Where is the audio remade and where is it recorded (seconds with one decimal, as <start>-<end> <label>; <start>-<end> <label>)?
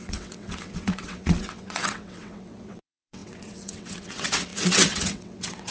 0.0-5.7 remade